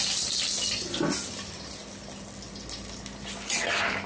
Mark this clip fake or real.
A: real